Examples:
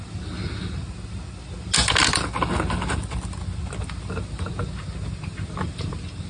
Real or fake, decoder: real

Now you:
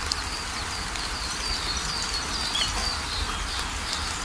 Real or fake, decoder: real